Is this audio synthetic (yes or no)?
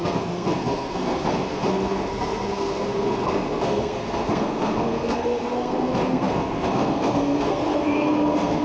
yes